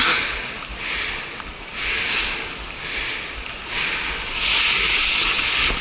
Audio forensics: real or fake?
real